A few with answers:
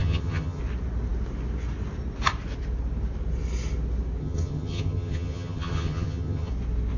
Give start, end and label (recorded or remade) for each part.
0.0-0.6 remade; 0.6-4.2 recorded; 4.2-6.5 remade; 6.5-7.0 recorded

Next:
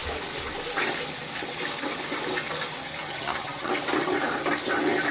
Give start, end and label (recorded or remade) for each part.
0.0-3.0 recorded; 3.0-3.7 remade; 3.7-5.1 recorded

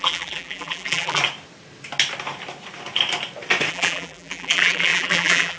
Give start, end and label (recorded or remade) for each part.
0.0-1.2 remade; 1.2-3.7 recorded; 3.7-5.6 remade